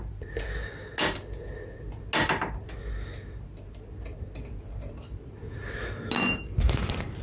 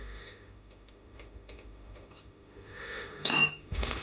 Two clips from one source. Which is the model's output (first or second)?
second